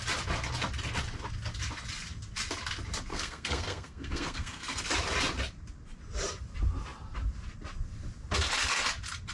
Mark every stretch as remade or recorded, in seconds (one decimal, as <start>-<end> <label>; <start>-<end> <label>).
0.0-3.1 recorded; 3.1-4.8 remade; 4.8-9.3 recorded